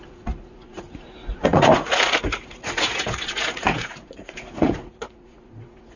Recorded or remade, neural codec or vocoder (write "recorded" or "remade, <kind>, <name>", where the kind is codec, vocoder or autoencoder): remade, vocoder, Vocos